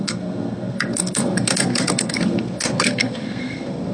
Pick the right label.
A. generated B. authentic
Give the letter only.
A